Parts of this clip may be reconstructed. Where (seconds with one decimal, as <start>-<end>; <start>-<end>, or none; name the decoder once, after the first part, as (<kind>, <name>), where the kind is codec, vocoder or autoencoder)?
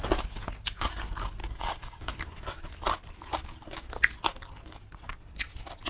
1.4-2.1 (codec, DAC)